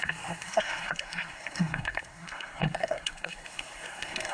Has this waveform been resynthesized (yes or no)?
yes